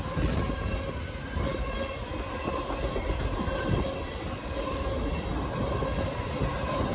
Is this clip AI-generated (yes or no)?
no